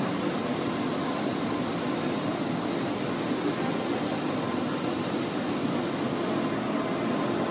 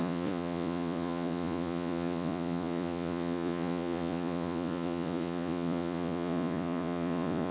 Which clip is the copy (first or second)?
second